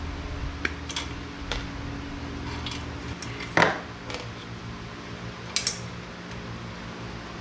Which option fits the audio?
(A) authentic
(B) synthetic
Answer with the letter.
A